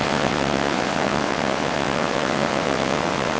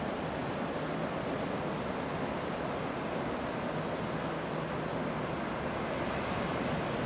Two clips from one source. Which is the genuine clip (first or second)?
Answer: second